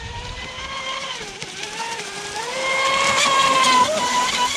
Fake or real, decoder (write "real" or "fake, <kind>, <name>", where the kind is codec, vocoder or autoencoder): fake, vocoder, BigVGAN v2